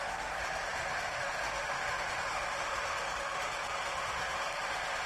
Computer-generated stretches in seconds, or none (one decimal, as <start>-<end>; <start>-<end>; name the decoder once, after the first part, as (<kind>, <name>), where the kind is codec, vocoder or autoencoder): 0.0-5.1 (autoencoder, DAC-VAE)